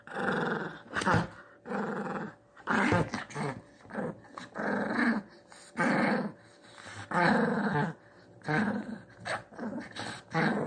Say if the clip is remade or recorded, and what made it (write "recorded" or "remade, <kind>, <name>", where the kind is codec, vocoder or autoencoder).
recorded